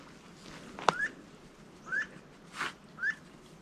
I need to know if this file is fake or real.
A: real